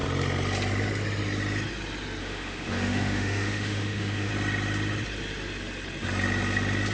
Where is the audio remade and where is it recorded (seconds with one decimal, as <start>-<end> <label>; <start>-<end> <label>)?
0.0-2.2 recorded; 2.2-4.3 remade; 4.3-6.9 recorded